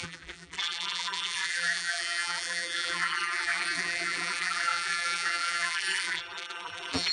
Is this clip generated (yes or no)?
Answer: yes